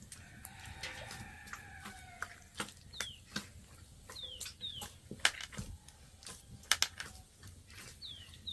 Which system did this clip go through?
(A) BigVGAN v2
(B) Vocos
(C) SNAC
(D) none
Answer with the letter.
D